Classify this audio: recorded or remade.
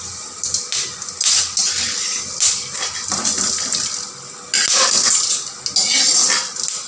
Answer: recorded